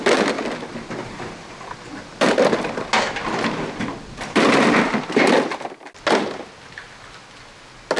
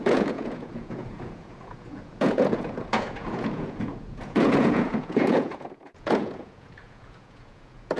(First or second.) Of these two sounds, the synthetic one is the second